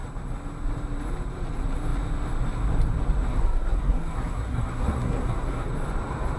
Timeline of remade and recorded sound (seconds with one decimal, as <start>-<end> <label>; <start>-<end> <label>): 0.0-3.3 recorded; 3.3-5.7 remade; 5.7-6.4 recorded